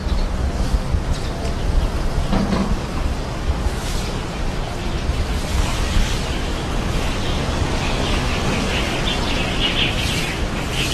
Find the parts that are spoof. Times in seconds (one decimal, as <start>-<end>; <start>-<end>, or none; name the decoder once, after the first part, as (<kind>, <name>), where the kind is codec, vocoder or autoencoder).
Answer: 0.4-0.9 (codec, DAC); 2.6-3.5; 5.5-9.0